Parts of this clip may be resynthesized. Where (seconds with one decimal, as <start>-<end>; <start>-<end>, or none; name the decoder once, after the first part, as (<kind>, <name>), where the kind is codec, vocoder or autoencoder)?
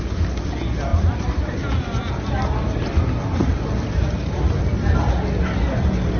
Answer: none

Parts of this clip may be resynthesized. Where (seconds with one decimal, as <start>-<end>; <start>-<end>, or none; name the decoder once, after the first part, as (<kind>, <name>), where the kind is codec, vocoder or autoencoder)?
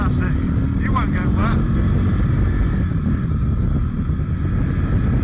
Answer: none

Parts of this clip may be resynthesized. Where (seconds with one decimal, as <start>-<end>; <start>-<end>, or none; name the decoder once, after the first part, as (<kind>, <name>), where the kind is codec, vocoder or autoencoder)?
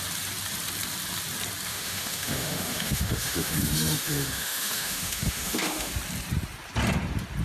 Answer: 1.7-5.9 (autoencoder, DAC-VAE)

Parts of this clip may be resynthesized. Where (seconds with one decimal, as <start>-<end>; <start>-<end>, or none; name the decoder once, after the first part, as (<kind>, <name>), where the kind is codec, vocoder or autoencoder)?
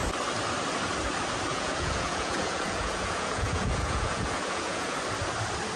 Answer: 1.5-5.0 (vocoder, Vocos)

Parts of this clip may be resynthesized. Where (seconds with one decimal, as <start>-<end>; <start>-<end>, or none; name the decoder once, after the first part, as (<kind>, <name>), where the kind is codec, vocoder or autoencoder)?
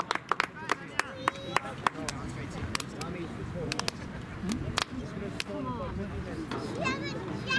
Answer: none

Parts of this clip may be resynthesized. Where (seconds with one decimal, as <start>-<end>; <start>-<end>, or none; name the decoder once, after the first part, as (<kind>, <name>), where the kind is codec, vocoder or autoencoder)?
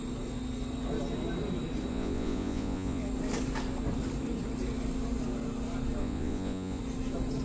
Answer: 1.9-3.0 (vocoder, Vocos); 6.0-6.8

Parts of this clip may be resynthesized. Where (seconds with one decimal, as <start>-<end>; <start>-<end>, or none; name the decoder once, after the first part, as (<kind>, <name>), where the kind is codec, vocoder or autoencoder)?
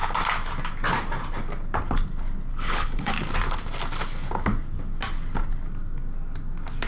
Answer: 2.5-3.1 (codec, HILCodec)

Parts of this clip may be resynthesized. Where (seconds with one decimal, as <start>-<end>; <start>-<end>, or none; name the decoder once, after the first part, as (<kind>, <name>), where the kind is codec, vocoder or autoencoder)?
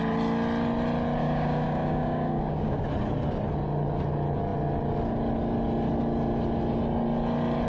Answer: 1.2-2.8 (codec, DAC)